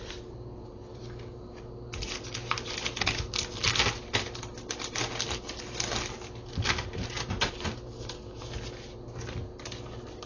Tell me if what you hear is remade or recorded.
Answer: recorded